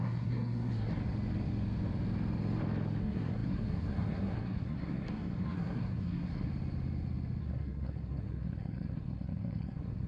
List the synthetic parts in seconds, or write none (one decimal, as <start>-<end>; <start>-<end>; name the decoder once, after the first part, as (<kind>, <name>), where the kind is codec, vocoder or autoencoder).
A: 0.0-0.9 (codec, SNAC); 3.0-6.5; 7.4-10.1